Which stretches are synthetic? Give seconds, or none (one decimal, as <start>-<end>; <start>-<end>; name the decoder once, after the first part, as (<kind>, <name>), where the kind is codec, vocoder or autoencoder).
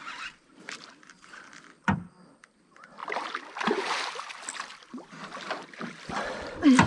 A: 0.0-2.5 (vocoder, BigVGAN v2)